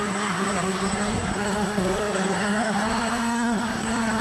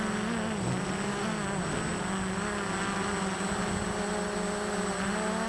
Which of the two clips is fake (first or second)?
first